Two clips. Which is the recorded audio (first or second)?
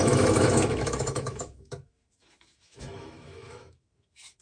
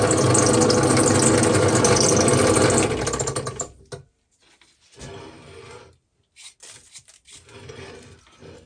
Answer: second